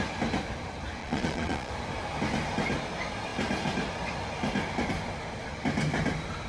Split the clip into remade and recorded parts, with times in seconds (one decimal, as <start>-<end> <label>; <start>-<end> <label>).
0.0-1.0 recorded; 1.0-1.7 remade; 1.7-6.5 recorded